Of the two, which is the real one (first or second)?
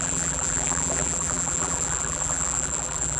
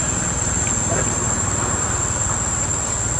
second